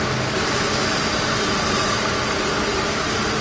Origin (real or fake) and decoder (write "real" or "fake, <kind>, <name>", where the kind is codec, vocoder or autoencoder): real